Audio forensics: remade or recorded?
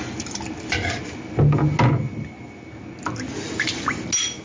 recorded